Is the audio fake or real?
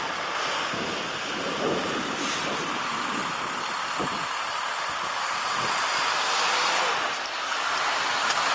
real